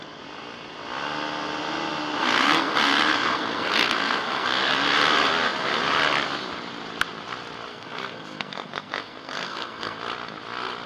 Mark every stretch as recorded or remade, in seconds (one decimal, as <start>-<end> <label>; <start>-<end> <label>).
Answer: 0.0-2.2 recorded; 2.2-4.6 remade; 4.6-7.7 recorded; 7.7-10.0 remade; 10.0-10.9 recorded